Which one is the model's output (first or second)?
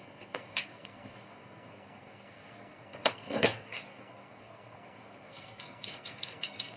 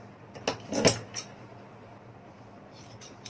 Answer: first